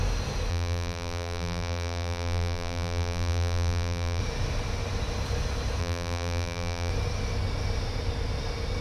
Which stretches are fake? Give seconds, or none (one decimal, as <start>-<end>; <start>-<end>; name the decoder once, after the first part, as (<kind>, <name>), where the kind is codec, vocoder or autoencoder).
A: 0.5-4.2 (vocoder, BigVGAN v2); 5.8-6.9

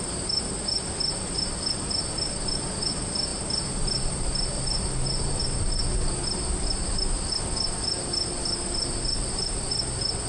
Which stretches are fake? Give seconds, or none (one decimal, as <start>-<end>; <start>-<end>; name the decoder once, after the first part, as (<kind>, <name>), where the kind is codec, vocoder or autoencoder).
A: 3.3-5.4 (vocoder, BigVGAN v2)

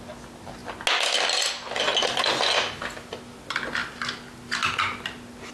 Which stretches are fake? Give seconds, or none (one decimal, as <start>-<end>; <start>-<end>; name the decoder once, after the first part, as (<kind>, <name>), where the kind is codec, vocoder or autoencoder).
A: none

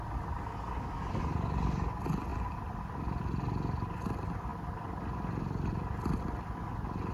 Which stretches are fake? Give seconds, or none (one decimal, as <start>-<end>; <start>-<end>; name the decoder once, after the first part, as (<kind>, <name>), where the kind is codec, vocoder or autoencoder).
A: 2.3-2.8 (vocoder, BigVGAN v2)

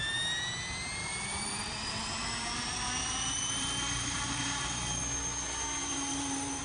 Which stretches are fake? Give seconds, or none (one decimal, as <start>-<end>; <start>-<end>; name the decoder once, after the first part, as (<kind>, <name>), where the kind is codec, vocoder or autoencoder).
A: 1.0-5.0 (vocoder, BigVGAN v2); 5.8-6.6

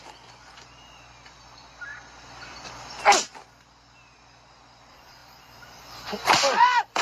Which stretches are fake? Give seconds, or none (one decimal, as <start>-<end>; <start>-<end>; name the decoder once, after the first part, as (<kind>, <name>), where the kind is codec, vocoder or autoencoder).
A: 1.9-3.0 (vocoder, BigVGAN v2); 5.2-7.0

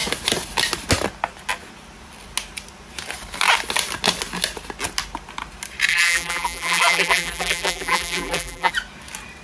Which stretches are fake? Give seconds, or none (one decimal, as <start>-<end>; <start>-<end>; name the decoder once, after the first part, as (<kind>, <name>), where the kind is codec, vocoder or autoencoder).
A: 5.9-8.7 (vocoder, BigVGAN v2)

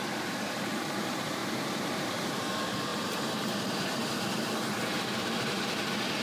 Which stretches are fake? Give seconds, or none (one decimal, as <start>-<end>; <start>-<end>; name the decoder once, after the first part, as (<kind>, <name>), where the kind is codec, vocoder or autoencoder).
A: 0.0-0.7 (vocoder, BigVGAN v2); 1.4-2.3; 2.9-5.6